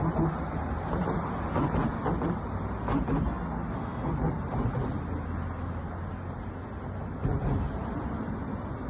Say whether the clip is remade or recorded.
recorded